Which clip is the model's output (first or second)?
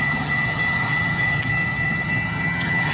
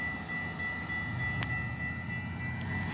first